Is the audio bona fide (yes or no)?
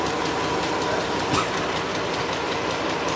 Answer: yes